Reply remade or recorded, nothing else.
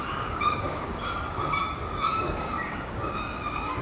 remade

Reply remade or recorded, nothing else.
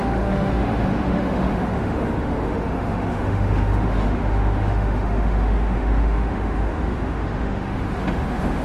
remade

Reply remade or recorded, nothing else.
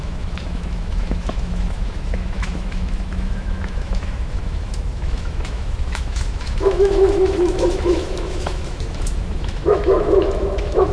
remade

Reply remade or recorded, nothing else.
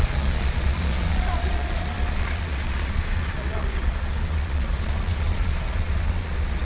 remade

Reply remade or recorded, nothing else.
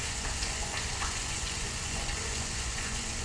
remade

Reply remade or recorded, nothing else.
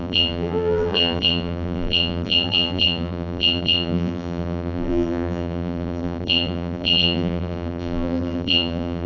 remade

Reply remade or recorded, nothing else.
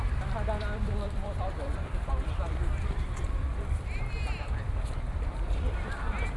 remade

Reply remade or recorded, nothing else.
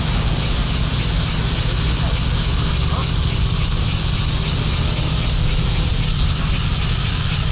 recorded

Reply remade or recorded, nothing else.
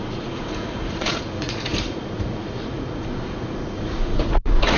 remade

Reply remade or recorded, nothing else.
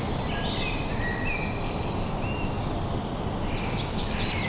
recorded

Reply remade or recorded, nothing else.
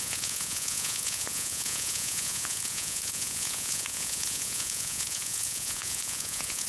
remade